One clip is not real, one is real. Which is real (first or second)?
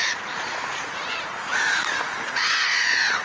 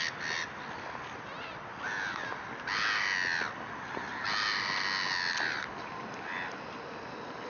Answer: second